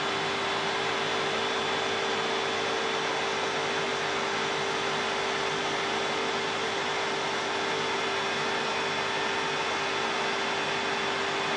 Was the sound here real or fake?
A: real